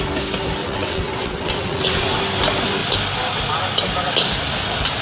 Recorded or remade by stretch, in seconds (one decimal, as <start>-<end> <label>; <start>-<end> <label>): 0.0-0.6 recorded; 0.6-2.1 remade; 2.1-5.0 recorded